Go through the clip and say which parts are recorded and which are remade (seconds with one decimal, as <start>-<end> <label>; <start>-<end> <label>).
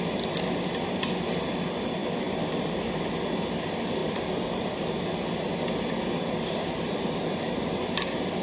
0.0-8.4 recorded